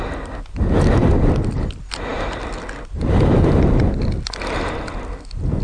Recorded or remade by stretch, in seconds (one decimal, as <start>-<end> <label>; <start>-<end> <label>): 0.0-5.6 recorded